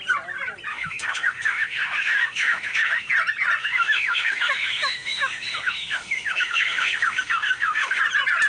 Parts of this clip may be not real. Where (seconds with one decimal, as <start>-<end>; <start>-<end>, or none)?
0.7-3.1; 3.6-8.0